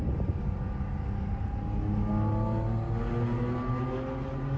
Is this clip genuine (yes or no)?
yes